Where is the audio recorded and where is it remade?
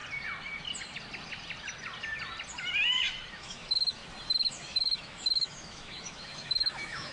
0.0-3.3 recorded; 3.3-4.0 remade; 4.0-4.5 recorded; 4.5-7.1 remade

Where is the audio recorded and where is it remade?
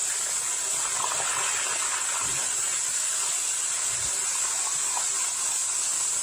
0.0-6.2 recorded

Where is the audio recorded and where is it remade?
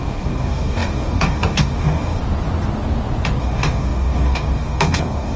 0.0-2.2 remade; 2.2-3.4 recorded; 3.4-5.4 remade